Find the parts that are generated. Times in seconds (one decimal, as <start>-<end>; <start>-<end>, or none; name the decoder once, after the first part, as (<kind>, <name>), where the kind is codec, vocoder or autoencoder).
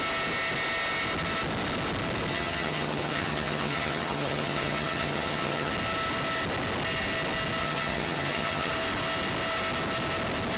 2.3-5.7 (vocoder, HiFi-GAN); 7.6-8.7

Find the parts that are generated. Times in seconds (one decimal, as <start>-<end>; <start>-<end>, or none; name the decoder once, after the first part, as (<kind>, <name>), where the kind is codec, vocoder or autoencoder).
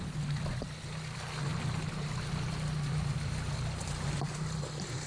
none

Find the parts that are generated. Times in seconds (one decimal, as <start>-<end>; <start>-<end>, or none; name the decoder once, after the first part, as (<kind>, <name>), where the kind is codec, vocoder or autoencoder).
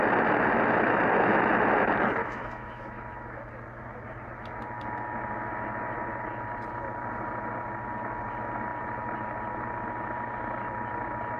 2.2-3.5 (autoencoder, DAC-VAE)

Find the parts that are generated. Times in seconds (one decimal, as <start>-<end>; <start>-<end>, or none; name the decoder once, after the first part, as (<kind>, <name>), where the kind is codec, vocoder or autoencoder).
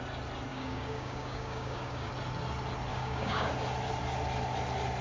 0.5-2.1 (codec, DAC); 2.9-3.5